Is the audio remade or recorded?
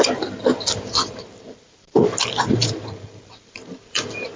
remade